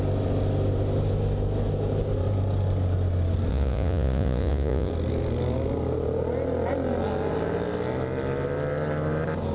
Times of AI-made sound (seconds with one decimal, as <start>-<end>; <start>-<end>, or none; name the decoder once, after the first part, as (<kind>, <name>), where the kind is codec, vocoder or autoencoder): 3.5-4.9 (vocoder, Vocos)